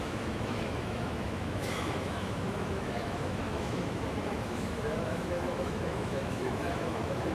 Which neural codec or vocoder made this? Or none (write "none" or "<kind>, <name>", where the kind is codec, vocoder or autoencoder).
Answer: autoencoder, DAC-VAE